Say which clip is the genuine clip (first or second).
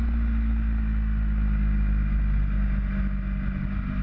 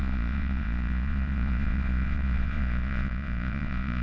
first